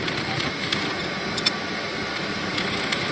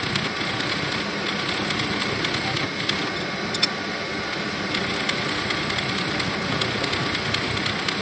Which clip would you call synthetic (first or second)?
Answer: first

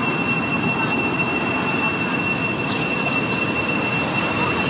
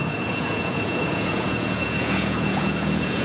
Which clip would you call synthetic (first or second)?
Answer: second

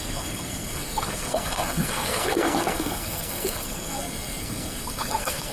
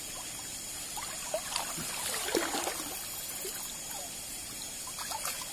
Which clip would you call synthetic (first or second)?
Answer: first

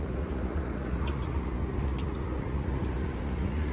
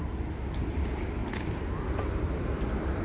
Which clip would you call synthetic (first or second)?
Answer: first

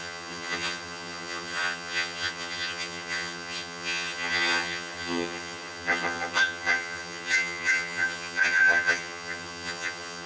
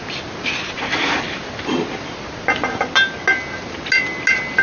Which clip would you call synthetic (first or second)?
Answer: first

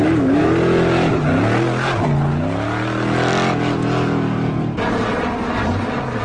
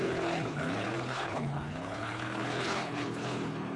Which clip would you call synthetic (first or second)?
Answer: second